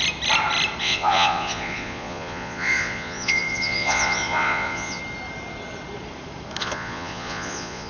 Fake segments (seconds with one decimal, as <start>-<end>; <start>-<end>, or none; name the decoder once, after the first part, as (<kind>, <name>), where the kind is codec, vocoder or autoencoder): 0.8-5.0 (vocoder, Vocos); 6.6-7.9